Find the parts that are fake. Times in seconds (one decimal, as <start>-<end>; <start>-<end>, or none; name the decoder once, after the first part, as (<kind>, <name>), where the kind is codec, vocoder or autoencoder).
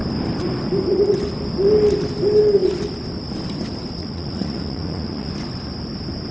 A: 4.0-5.3 (vocoder, Vocos)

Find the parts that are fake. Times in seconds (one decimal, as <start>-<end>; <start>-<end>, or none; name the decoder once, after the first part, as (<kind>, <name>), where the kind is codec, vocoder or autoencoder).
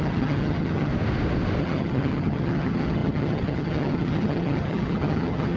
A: 0.0-0.9 (vocoder, HiFi-GAN); 1.6-5.6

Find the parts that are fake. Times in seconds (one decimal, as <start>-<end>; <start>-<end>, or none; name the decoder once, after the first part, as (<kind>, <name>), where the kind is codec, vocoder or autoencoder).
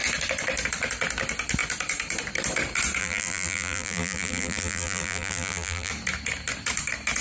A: 3.0-5.9 (vocoder, BigVGAN v2)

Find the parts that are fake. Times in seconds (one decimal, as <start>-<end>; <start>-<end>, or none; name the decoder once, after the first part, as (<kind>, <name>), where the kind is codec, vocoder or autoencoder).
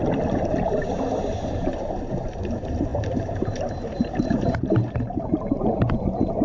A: 1.4-6.4 (vocoder, BigVGAN v2)